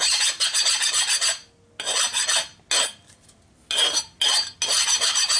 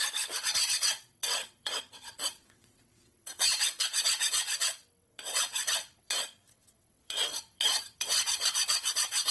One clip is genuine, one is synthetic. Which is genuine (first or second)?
first